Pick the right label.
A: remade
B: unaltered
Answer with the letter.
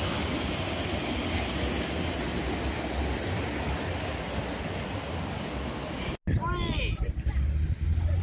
B